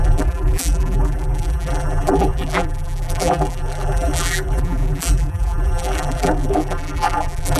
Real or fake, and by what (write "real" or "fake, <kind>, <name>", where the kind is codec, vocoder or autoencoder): fake, vocoder, BigVGAN v2